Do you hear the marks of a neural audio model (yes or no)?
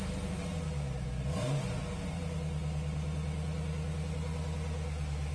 no